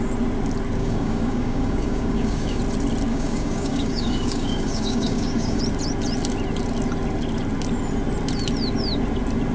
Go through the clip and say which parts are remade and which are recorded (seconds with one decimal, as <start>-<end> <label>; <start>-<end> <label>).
0.0-0.8 recorded; 0.8-2.6 remade; 2.6-3.1 recorded; 3.1-5.6 remade; 5.6-9.5 recorded